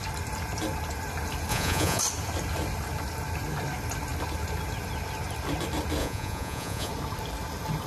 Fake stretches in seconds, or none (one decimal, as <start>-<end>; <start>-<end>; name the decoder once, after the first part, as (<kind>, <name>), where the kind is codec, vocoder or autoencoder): 1.5-2.0 (vocoder, Vocos); 6.0-6.9